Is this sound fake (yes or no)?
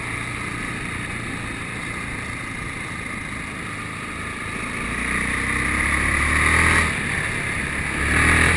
no